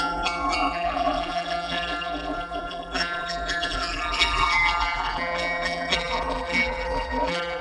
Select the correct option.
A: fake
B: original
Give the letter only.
A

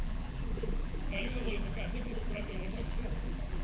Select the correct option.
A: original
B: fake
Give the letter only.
B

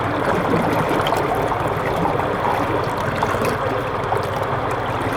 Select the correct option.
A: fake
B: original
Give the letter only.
B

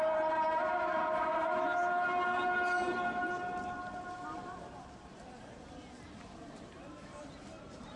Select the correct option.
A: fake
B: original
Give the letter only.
A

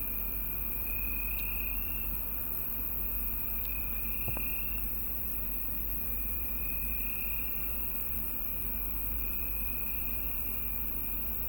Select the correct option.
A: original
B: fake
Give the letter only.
B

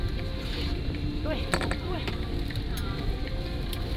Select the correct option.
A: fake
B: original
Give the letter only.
A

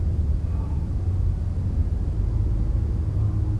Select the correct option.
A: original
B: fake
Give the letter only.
A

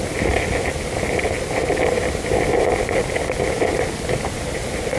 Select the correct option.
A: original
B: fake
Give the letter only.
A